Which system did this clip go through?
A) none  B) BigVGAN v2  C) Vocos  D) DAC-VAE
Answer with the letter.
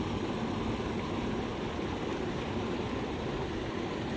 A